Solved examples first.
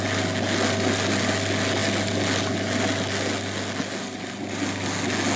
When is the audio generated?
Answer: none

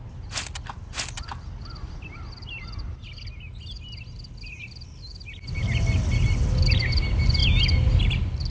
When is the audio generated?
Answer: none

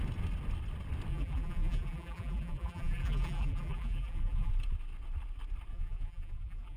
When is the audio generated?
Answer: 1.1-4.5 (vocoder, BigVGAN v2); 5.7-6.8

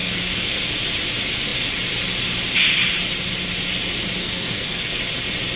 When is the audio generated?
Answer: 0.0-0.6 (codec, SNAC); 4.2-5.0

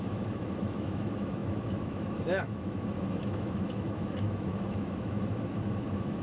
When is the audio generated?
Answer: 0.0-6.2 (autoencoder, DAC-VAE)

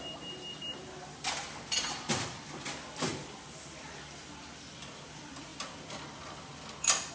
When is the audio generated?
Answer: none

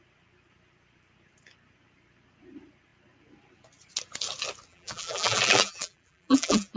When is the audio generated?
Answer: 4.7-6.8 (vocoder, BigVGAN v2)